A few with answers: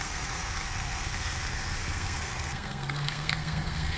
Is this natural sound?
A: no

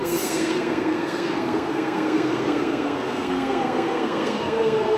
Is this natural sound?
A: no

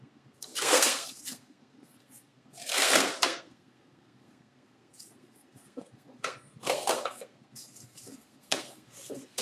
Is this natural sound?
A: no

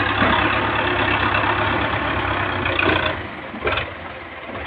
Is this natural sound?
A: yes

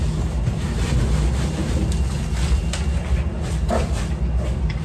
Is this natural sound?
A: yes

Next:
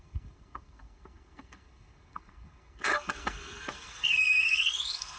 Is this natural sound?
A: no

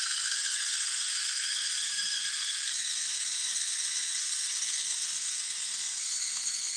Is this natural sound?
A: no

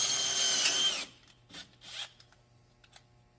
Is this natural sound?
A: yes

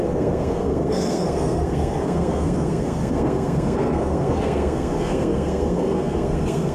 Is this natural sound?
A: no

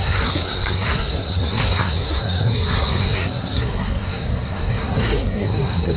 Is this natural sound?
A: no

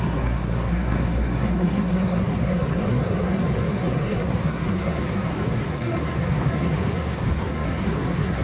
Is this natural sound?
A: no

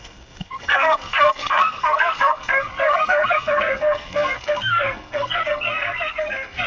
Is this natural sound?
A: no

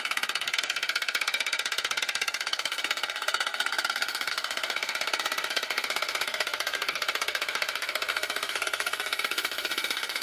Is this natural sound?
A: no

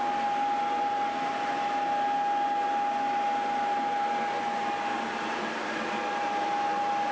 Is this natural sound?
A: yes